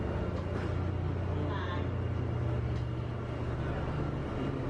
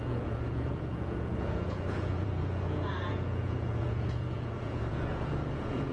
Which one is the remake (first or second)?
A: second